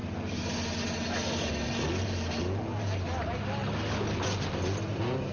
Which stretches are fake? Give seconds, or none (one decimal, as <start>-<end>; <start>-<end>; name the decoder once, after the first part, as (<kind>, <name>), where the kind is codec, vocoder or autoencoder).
none